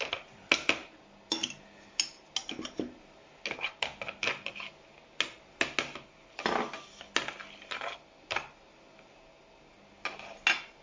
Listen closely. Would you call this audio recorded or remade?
recorded